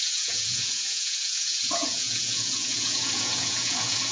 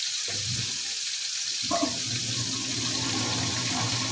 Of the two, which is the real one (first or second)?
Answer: second